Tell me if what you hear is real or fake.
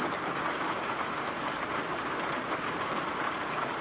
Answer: fake